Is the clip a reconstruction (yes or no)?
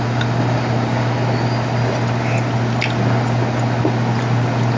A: no